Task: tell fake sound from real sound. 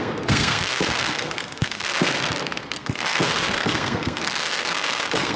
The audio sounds fake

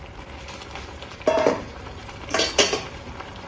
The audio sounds fake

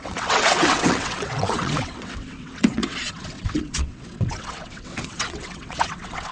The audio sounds fake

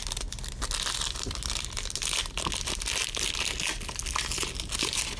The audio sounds real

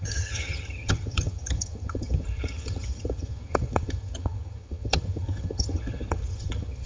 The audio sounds fake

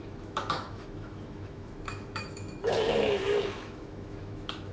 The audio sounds fake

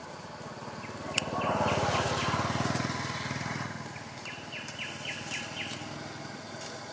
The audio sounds real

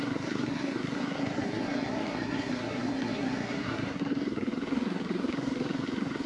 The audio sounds fake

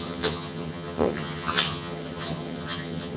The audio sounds fake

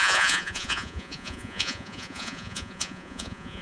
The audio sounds fake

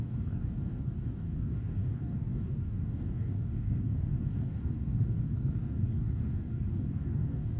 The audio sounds fake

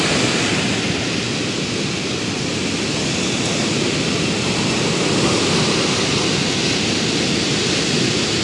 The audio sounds real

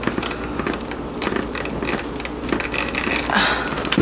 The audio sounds real